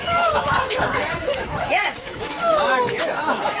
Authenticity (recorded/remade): remade